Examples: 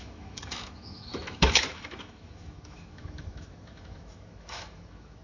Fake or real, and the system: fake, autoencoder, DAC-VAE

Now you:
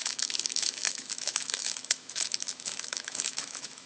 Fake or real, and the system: fake, autoencoder, DAC-VAE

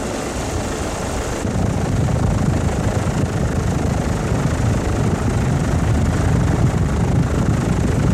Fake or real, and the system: real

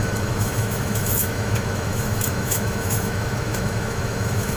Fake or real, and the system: fake, autoencoder, DAC-VAE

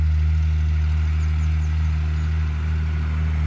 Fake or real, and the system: real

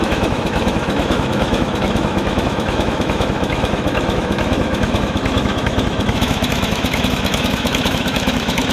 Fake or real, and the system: fake, autoencoder, DAC-VAE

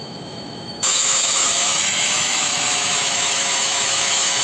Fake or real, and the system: fake, autoencoder, DAC-VAE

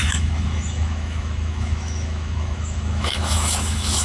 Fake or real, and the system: fake, autoencoder, DAC-VAE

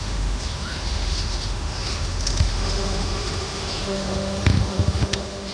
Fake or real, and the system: fake, autoencoder, DAC-VAE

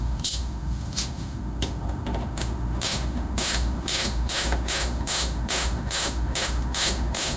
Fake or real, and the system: fake, autoencoder, DAC-VAE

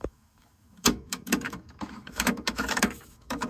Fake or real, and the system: fake, autoencoder, DAC-VAE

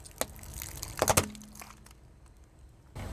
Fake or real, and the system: real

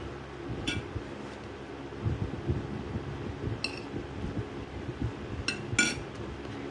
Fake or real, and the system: real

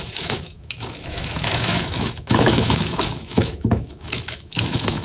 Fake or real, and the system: fake, autoencoder, DAC-VAE